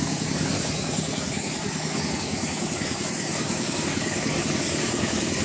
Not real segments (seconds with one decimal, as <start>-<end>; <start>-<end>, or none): 0.0-5.4